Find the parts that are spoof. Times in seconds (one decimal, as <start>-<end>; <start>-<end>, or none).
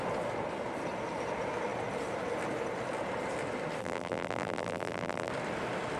3.8-5.3